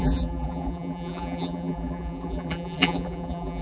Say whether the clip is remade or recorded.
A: remade